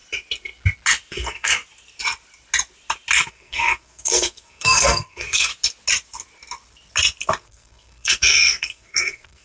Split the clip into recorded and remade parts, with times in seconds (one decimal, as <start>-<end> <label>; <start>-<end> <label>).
0.0-1.1 recorded; 1.1-1.5 remade; 1.5-3.3 recorded; 3.3-5.5 remade; 5.5-7.4 recorded; 7.4-9.4 remade